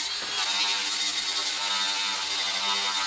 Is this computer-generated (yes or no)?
no